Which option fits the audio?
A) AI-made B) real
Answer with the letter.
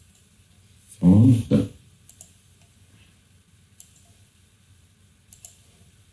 B